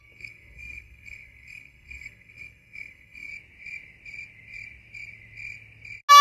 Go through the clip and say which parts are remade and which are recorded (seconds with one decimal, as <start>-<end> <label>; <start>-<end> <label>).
0.0-3.3 remade; 3.3-6.2 recorded